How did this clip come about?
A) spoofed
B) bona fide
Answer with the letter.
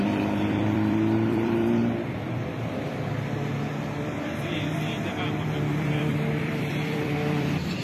A